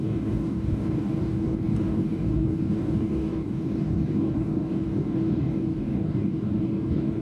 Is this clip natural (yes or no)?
no